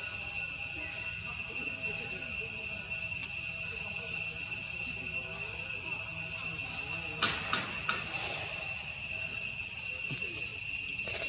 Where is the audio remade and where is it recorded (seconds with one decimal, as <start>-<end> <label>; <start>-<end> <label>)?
0.0-3.2 recorded; 3.2-5.0 remade; 5.0-11.3 recorded